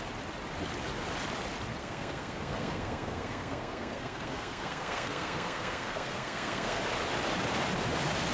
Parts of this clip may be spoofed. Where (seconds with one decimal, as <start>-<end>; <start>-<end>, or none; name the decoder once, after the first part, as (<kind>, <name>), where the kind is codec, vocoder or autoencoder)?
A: 1.8-6.8 (codec, SNAC)